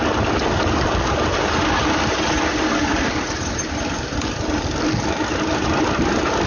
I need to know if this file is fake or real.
real